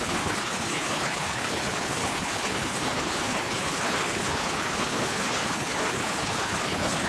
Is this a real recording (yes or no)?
no